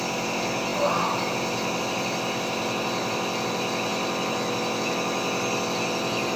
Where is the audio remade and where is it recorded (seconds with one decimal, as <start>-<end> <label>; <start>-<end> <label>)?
0.0-6.4 recorded